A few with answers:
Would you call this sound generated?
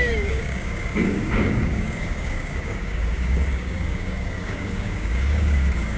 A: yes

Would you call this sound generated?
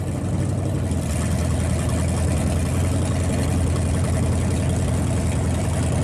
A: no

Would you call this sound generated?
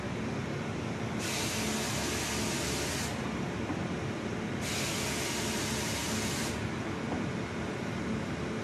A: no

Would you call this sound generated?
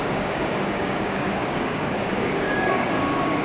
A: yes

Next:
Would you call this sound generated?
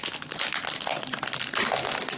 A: no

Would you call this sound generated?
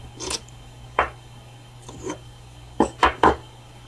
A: yes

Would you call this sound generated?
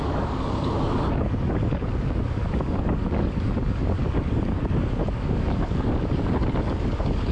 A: yes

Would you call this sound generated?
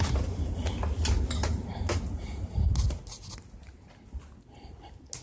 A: no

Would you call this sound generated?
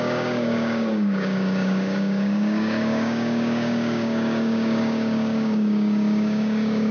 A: yes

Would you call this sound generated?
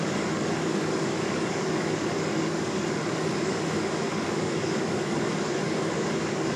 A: yes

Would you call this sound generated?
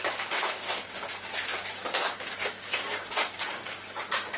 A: yes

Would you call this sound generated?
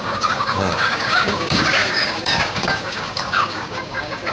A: yes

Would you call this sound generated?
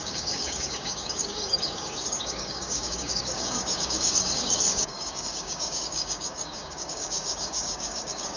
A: yes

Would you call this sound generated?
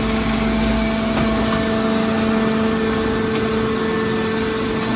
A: no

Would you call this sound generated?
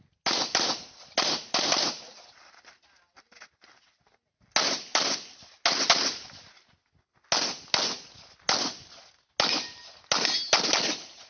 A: no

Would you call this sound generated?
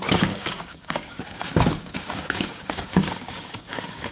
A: yes